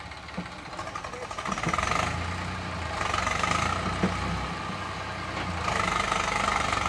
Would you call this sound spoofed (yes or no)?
no